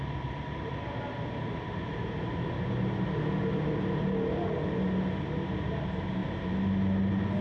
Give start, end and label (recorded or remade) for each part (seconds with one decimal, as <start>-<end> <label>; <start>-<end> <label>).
0.0-7.4 recorded